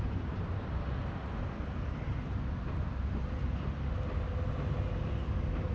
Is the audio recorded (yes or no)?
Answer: yes